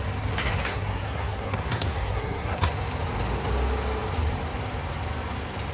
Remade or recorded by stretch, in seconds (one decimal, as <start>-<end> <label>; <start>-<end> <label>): 0.0-0.4 recorded; 0.4-2.7 remade; 2.7-5.7 recorded